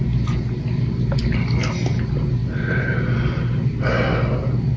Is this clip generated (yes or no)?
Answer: no